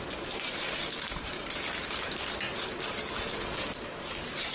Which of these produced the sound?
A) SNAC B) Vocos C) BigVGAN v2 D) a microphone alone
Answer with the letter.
C